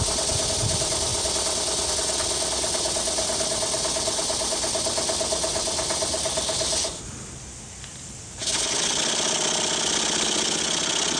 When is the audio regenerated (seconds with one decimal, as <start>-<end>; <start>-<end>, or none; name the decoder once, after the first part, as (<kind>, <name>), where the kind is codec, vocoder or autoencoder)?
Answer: none